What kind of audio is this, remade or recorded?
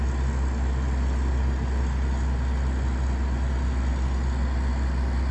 recorded